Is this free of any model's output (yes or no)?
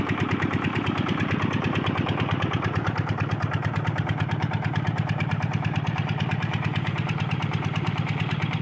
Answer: no